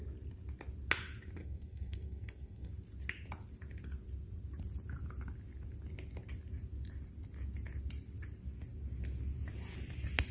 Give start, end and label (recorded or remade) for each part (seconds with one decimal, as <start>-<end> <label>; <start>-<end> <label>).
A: 0.0-1.4 recorded; 1.4-2.7 remade; 2.7-10.3 recorded

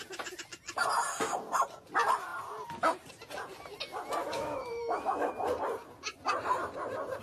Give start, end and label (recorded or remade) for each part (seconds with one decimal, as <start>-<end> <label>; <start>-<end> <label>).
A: 0.0-4.2 recorded; 4.2-5.3 remade; 5.3-7.2 recorded

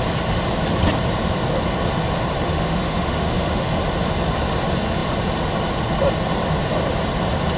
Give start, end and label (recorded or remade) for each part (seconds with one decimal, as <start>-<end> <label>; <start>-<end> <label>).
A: 0.0-2.5 recorded; 2.5-3.8 remade; 3.8-7.6 recorded

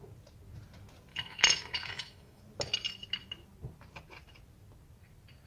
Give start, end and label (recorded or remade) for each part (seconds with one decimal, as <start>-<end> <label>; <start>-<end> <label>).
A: 0.0-1.1 recorded; 1.1-2.4 remade; 2.4-5.5 recorded